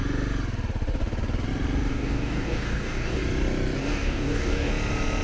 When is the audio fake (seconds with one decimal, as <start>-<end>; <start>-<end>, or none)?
1.9-3.2; 3.8-4.7